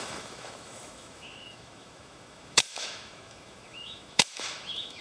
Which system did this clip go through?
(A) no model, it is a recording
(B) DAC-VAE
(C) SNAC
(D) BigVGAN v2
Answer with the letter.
B